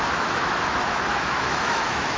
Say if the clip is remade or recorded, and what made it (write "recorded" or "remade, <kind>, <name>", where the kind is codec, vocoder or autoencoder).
remade, autoencoder, DAC-VAE